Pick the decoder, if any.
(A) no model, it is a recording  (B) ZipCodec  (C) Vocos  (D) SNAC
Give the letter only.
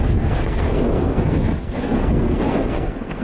D